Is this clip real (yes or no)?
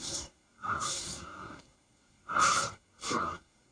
no